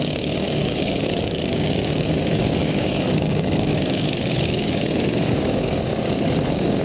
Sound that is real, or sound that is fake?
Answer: fake